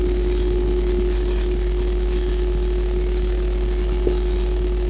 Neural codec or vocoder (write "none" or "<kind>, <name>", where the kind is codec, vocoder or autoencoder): none